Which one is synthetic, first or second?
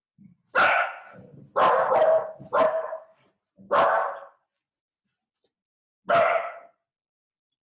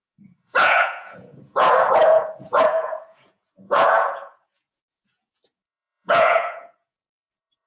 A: second